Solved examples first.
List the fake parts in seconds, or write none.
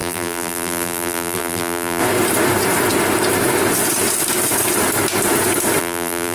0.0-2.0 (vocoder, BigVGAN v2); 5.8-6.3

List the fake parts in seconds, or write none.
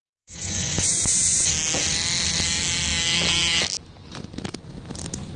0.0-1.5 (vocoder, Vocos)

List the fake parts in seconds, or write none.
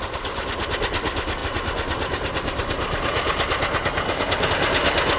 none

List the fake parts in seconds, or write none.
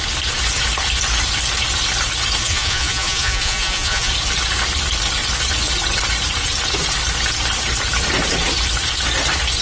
2.4-4.1 (vocoder, Vocos)